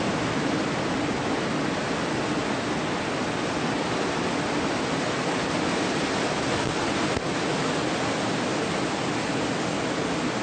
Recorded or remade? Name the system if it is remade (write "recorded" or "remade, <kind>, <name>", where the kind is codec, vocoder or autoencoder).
recorded